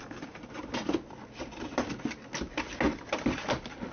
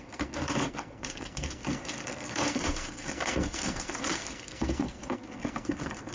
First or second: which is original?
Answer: first